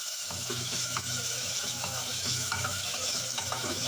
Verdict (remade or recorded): remade